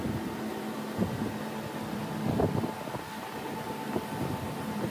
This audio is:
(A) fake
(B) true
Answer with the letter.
B